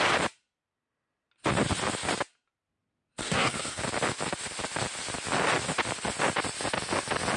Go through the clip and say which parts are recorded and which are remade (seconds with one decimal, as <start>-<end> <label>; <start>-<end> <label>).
0.0-3.2 recorded; 3.2-3.8 remade; 3.8-7.4 recorded